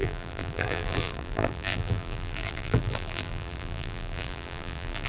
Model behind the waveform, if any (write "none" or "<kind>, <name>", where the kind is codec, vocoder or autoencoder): vocoder, BigVGAN v2